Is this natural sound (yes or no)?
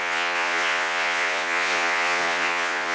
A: no